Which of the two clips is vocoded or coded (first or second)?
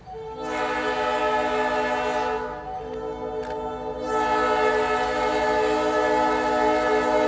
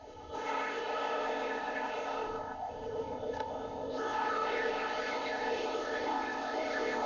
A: second